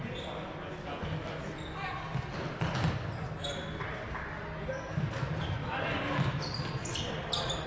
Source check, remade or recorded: recorded